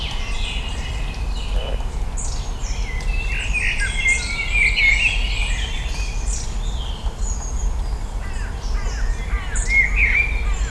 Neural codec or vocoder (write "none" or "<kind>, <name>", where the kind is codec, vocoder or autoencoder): none